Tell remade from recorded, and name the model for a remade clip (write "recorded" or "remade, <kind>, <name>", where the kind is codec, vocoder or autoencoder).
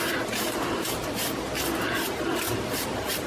recorded